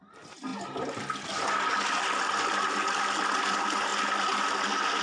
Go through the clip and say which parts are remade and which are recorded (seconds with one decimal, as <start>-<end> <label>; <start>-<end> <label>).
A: 0.0-5.0 recorded